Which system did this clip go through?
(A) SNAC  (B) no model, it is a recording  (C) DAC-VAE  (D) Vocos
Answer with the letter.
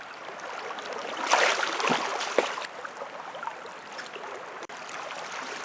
B